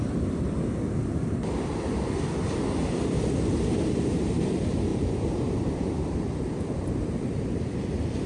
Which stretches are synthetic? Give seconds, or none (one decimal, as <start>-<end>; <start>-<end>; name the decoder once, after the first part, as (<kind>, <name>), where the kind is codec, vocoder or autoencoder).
4.9-7.9 (vocoder, BigVGAN v2)